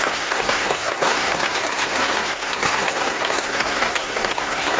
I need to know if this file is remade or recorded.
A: remade